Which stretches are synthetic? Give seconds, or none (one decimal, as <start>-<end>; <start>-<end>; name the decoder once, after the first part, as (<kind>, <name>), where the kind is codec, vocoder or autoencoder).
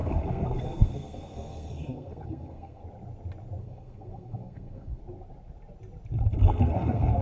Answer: 0.0-2.8 (codec, SNAC); 3.6-5.0; 6.4-7.2